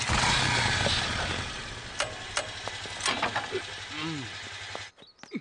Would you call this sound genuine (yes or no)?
yes